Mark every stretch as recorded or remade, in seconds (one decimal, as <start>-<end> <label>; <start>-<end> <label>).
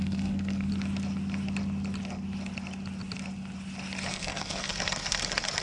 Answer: 0.0-0.7 remade; 0.7-4.1 recorded; 4.1-4.7 remade; 4.7-5.6 recorded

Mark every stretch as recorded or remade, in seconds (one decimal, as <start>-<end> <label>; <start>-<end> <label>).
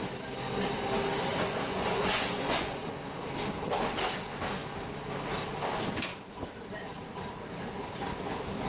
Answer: 0.0-1.3 recorded; 1.3-3.0 remade; 3.0-8.7 recorded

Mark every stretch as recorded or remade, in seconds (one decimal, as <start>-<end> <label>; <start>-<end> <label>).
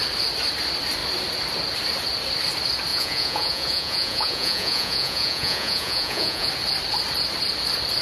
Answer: 0.0-2.9 recorded; 2.9-6.5 remade; 6.5-8.0 recorded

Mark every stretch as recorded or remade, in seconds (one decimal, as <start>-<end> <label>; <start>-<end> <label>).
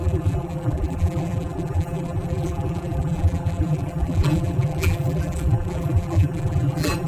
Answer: 0.0-7.1 remade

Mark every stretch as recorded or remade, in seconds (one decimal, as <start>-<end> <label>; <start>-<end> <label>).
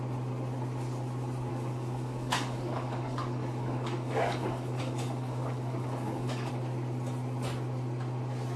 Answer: 0.0-1.5 recorded; 1.5-6.5 remade; 6.5-8.6 recorded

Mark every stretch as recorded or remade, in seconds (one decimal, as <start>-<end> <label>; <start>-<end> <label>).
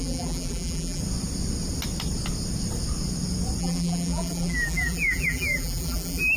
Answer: 0.0-1.0 remade; 1.0-3.6 recorded; 3.6-6.4 remade